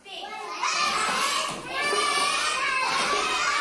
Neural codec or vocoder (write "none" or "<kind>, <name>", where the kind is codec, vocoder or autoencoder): none